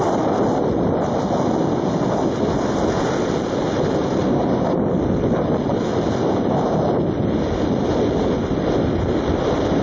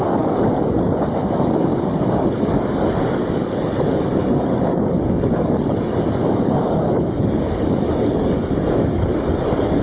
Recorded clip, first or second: first